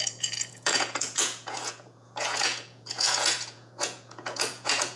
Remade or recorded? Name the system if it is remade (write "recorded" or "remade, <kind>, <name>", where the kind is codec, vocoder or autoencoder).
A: remade, vocoder, Vocos